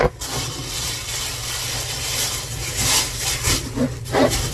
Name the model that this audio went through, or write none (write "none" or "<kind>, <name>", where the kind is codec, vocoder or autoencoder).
none